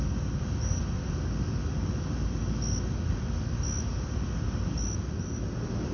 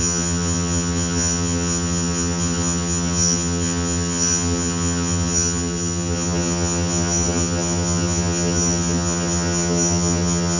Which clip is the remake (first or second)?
second